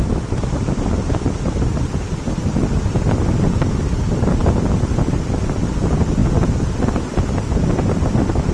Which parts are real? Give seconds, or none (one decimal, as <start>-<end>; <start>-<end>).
0.0-8.5